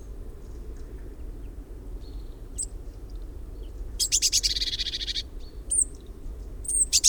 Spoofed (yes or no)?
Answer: yes